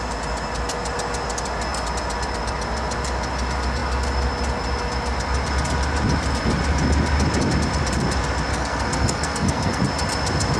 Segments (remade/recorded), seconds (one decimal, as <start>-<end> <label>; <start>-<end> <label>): 0.0-8.5 recorded; 8.5-9.8 remade; 9.8-10.6 recorded